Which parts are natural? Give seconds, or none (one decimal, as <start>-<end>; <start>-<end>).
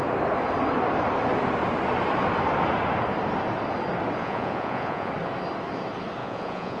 0.0-4.2; 5.1-6.2